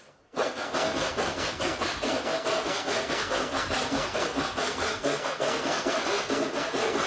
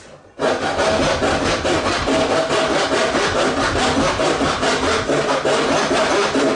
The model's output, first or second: first